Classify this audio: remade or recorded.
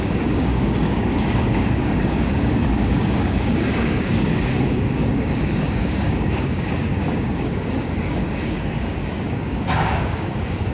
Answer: remade